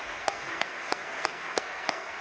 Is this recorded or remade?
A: remade